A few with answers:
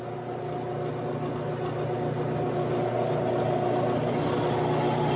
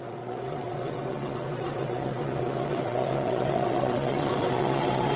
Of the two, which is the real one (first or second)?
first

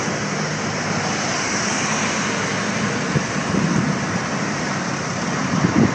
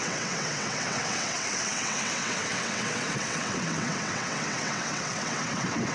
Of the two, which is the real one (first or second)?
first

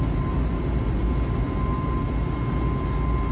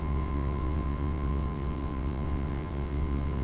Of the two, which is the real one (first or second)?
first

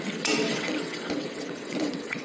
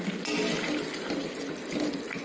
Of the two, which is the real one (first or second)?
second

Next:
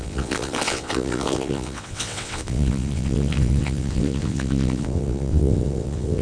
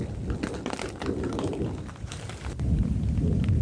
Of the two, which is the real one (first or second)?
second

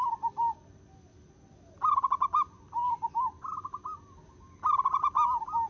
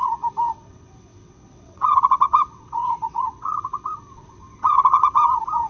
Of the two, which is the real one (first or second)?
first